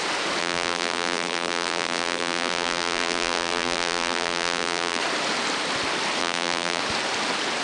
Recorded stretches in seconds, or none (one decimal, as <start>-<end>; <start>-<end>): 0.0-0.4; 5.0-6.2; 6.8-7.6